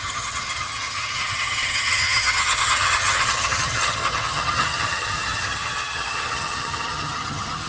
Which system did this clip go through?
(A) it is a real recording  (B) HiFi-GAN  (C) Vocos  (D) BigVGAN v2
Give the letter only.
B